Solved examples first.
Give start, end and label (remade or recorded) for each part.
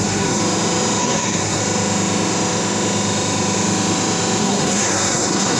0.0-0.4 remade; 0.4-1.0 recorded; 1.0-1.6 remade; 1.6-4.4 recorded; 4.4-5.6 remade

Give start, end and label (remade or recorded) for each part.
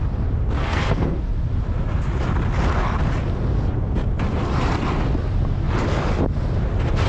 0.0-0.6 recorded; 0.6-1.2 remade; 1.2-7.1 recorded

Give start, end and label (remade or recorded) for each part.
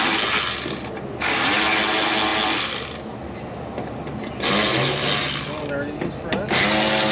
0.0-7.1 recorded